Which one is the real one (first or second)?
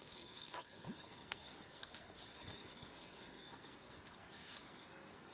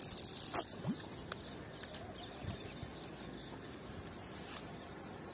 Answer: second